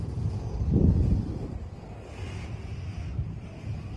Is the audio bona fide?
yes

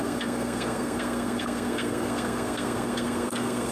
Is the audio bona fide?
no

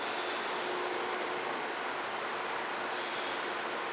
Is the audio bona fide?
yes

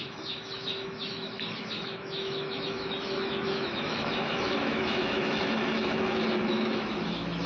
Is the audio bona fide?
no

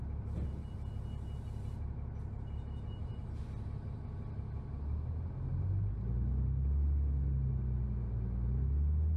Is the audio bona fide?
yes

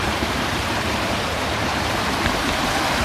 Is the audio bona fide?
no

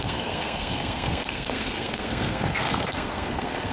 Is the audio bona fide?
no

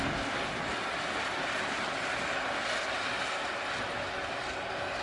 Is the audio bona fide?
yes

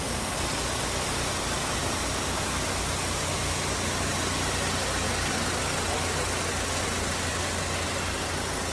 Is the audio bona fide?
yes